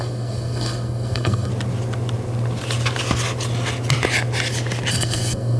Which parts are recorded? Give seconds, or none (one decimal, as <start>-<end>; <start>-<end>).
1.5-4.9